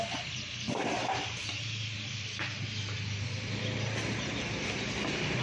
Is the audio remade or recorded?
recorded